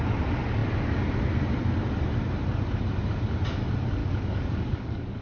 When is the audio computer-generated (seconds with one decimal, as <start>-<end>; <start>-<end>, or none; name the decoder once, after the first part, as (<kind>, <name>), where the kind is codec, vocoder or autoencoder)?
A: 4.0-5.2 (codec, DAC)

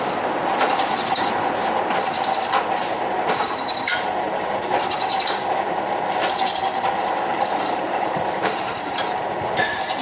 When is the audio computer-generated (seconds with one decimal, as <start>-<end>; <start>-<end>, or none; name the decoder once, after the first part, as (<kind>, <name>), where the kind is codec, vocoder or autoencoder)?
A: 7.3-10.0 (vocoder, BigVGAN v2)

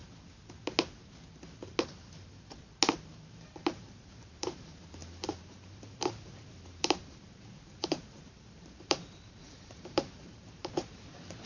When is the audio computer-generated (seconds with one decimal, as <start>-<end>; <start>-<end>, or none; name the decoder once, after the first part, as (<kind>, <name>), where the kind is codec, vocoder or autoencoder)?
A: 3.1-11.5 (vocoder, BigVGAN v2)